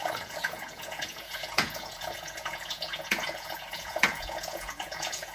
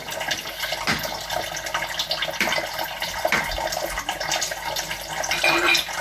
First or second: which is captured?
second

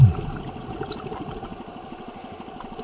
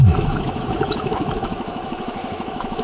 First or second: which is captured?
first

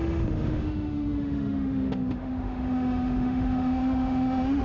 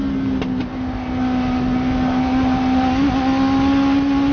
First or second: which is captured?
second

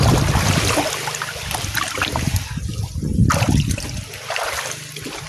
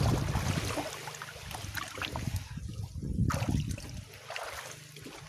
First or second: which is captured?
second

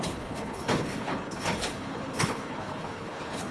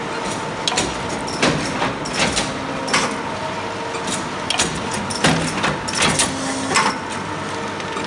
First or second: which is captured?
second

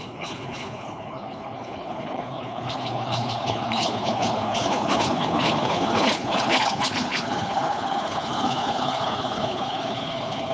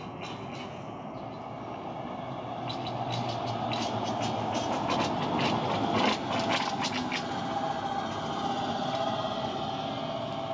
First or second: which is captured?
second